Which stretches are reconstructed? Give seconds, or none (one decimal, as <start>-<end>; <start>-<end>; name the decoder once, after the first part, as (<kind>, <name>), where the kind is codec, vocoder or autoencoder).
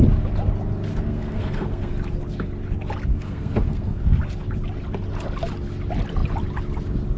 0.9-1.9 (codec, SNAC); 3.1-4.2